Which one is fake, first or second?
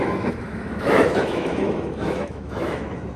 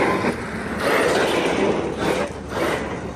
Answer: first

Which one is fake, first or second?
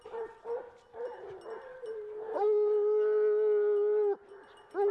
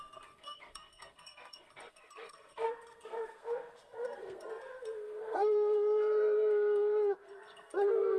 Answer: second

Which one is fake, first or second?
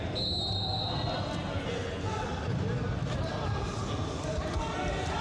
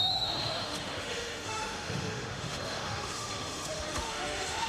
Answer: second